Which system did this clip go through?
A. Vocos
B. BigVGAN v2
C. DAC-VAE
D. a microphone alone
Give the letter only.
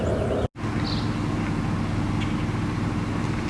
D